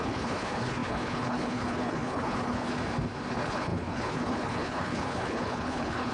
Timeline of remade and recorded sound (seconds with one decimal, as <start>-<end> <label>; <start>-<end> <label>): 0.0-2.8 remade; 2.8-3.3 recorded; 3.3-6.1 remade